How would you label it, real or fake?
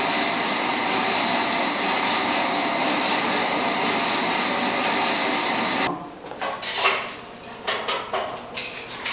real